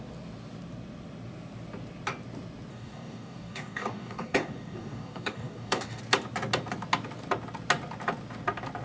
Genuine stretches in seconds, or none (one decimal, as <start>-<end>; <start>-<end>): 0.0-2.7; 6.0-8.8